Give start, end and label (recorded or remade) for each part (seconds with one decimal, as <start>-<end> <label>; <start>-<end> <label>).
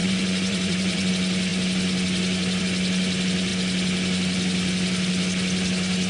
0.0-1.1 remade; 1.1-6.1 recorded